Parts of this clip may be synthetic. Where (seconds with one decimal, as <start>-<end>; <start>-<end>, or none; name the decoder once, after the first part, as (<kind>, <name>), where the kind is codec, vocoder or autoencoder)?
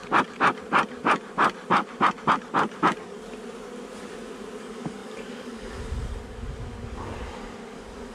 4.6-8.1 (codec, DAC)